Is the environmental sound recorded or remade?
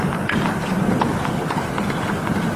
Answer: recorded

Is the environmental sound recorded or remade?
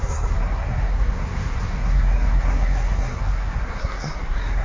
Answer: remade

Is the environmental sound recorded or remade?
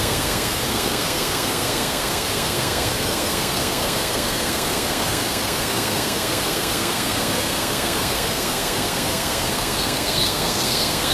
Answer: remade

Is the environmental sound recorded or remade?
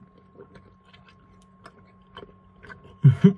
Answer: recorded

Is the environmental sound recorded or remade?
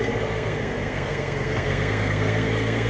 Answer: remade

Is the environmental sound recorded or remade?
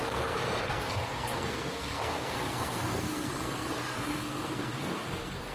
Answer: remade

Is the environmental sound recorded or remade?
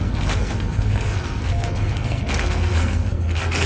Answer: remade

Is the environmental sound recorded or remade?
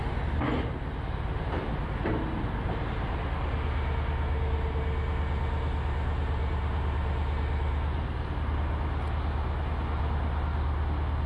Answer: recorded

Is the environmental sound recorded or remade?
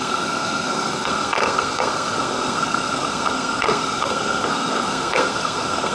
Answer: remade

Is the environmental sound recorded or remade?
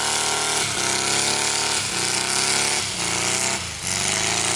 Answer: recorded